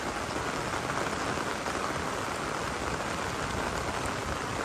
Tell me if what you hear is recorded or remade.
recorded